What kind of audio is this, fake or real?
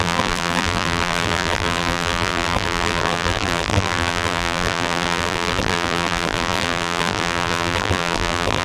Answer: fake